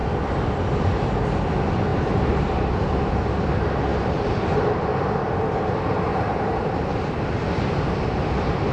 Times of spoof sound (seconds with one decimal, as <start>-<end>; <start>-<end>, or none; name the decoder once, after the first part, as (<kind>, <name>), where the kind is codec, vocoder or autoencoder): 1.9-3.0 (vocoder, BigVGAN v2); 3.9-4.9; 6.1-7.1